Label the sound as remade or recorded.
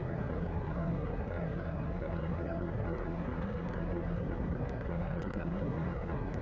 remade